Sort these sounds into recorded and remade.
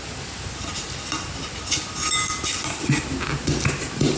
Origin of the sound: recorded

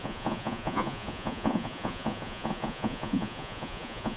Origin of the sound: remade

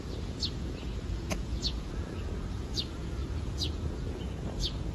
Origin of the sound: remade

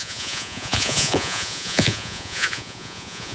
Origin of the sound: remade